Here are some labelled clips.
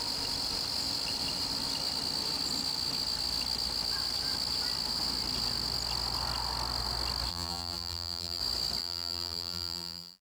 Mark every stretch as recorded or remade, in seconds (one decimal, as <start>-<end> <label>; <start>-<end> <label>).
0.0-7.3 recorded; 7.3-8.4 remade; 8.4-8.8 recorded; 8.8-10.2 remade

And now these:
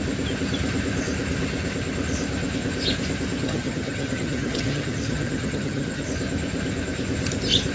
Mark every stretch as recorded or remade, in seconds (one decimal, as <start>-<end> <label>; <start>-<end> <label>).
0.0-3.4 recorded; 3.4-6.1 remade; 6.1-7.7 recorded

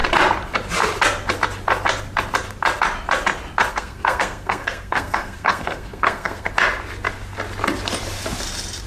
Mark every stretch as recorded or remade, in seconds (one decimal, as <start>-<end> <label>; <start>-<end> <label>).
0.0-3.7 recorded; 3.7-6.5 remade; 6.5-8.9 recorded

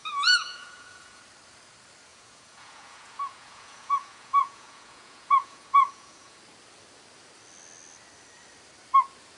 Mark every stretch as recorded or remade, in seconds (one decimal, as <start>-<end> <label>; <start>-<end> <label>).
0.0-1.2 remade; 1.2-2.1 recorded; 2.1-6.4 remade; 6.4-9.4 recorded

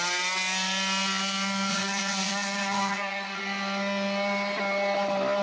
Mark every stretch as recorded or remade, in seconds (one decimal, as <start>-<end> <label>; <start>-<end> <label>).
0.0-1.7 recorded; 1.7-3.4 remade; 3.4-5.4 recorded

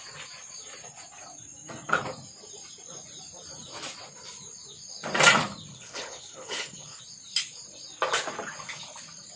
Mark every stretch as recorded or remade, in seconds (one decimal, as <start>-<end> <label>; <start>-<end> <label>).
0.0-5.7 recorded; 5.7-7.0 remade; 7.0-9.4 recorded